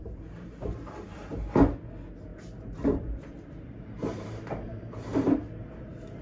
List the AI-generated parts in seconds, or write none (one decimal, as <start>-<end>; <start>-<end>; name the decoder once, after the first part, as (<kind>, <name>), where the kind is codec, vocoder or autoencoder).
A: 0.0-1.3 (vocoder, BigVGAN v2); 2.3-6.2